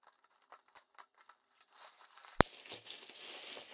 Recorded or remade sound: recorded